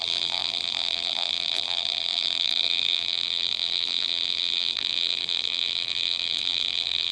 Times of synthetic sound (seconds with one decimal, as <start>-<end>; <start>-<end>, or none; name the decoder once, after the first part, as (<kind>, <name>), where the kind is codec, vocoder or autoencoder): 0.0-7.1 (vocoder, BigVGAN v2)